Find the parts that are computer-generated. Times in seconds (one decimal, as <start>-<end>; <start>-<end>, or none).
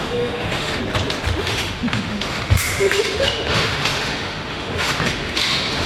0.0-0.8; 1.4-5.9